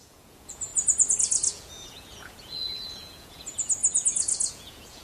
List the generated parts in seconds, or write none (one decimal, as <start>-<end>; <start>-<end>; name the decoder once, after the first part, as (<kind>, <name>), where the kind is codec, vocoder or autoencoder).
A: 0.0-0.7 (vocoder, Vocos); 1.5-3.8; 4.5-5.0